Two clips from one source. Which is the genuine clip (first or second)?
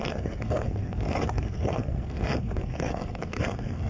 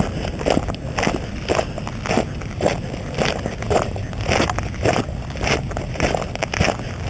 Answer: second